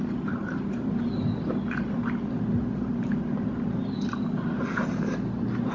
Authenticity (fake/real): real